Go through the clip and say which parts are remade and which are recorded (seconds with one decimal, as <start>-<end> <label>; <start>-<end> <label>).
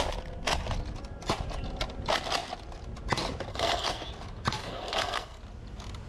0.0-3.5 recorded; 3.5-4.1 remade; 4.1-4.6 recorded; 4.6-5.4 remade; 5.4-6.1 recorded